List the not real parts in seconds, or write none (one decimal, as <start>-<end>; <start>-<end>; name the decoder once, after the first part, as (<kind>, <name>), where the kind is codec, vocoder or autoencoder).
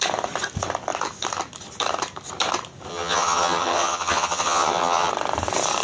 2.9-5.1 (vocoder, HiFi-GAN)